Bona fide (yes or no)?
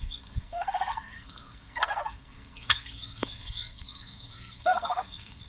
no